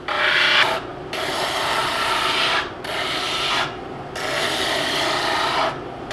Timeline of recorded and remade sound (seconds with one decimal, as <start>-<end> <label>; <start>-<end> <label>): 0.0-6.1 recorded